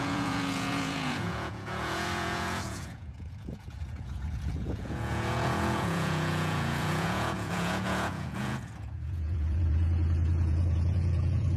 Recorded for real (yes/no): no